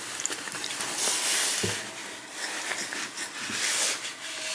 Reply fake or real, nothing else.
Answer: real